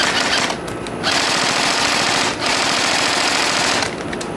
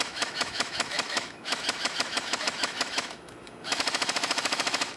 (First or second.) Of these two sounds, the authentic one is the first